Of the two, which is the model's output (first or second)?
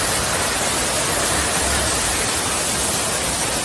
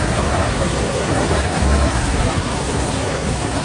second